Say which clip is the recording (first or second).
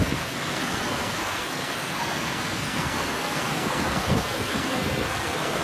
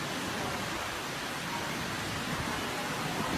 second